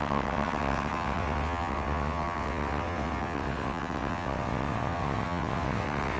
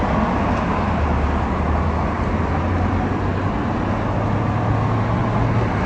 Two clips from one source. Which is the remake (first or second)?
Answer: first